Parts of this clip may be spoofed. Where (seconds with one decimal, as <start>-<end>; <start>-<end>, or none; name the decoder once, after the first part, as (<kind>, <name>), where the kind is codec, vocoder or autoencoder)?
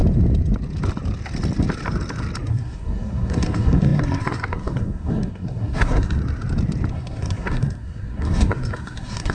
2.5-6.2 (codec, SNAC); 6.9-9.3